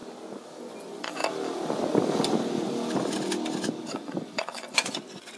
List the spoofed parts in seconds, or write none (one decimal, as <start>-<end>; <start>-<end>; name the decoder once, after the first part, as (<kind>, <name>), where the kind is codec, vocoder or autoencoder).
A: 0.6-1.2 (vocoder, Vocos); 3.9-5.4